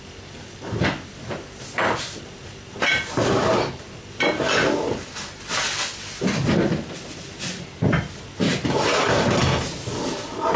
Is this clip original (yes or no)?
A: yes